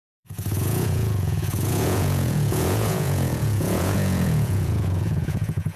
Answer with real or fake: fake